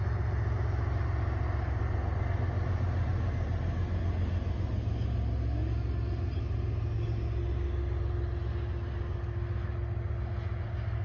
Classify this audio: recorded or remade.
recorded